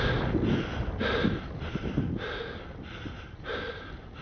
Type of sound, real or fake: real